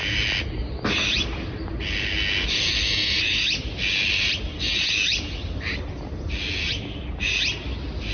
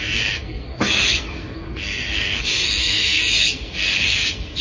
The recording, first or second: first